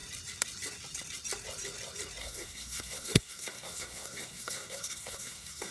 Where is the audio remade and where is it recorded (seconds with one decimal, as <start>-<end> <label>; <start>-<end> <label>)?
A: 0.0-2.2 recorded; 2.2-5.7 remade